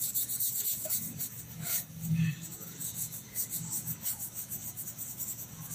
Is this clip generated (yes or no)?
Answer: yes